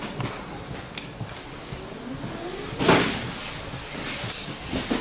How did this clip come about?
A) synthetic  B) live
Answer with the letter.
B